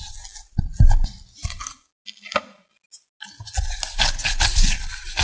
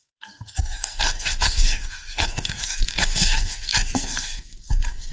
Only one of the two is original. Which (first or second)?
first